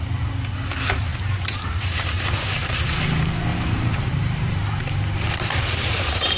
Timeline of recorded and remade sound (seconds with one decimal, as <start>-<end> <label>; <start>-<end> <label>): 0.0-1.1 recorded; 1.1-3.0 remade; 3.0-3.5 recorded; 3.5-6.4 remade